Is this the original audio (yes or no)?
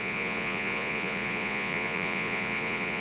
no